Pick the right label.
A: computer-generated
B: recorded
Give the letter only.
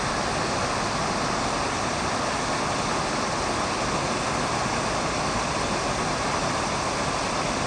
B